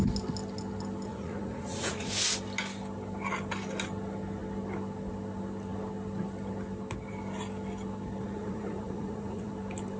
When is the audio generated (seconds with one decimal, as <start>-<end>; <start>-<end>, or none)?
1.1-2.1; 8.2-9.5